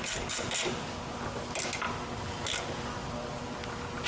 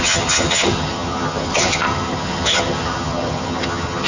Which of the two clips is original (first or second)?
first